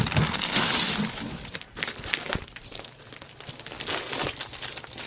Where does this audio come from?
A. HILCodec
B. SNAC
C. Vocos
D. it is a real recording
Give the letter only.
D